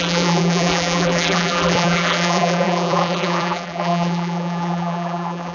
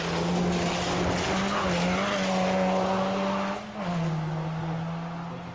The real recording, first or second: second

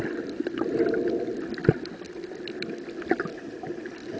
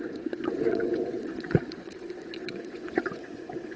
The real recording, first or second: first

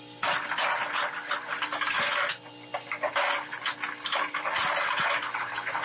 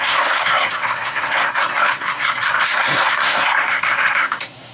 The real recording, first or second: first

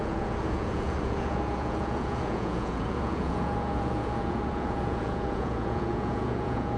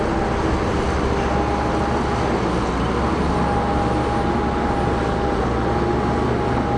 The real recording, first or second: second